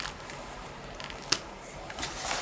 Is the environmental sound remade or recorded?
recorded